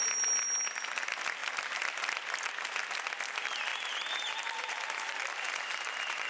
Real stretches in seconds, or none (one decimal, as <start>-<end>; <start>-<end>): 0.0-3.7